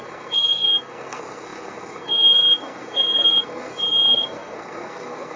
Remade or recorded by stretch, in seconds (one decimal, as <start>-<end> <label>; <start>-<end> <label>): 0.0-5.4 remade